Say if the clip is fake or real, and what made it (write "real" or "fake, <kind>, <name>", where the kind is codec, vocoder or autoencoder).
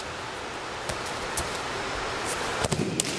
real